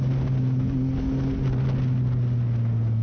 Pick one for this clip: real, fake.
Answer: real